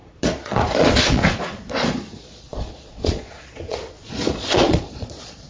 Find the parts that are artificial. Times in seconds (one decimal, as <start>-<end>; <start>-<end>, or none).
0.0-5.5